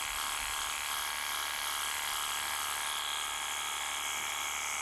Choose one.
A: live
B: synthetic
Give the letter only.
A